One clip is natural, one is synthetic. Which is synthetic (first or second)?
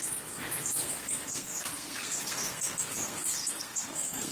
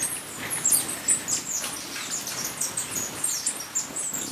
first